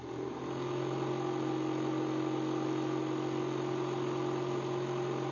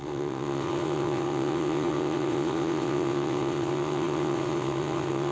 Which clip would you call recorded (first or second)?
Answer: first